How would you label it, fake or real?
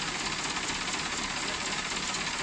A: real